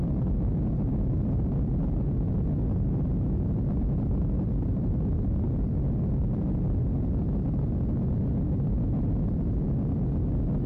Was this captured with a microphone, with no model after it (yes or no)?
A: yes